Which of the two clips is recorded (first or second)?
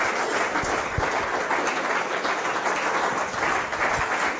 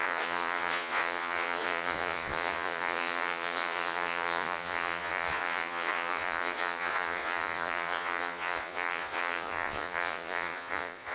first